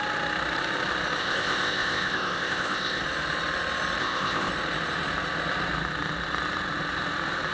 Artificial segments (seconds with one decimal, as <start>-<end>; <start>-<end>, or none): 1.2-3.0; 4.0-4.5